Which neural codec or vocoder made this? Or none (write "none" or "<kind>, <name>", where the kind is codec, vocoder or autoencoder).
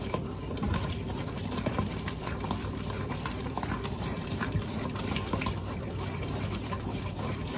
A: vocoder, BigVGAN v2